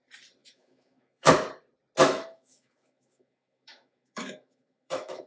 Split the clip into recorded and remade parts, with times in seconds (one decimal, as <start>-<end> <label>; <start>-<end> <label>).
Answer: 0.0-0.4 recorded; 0.4-1.3 remade; 1.3-2.0 recorded; 2.0-5.3 remade